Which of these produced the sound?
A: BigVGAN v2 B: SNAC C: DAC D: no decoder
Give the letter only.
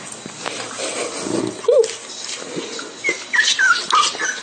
D